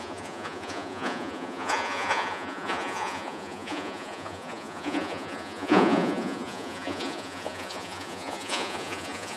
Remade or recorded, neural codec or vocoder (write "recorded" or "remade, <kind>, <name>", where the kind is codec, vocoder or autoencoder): remade, vocoder, Vocos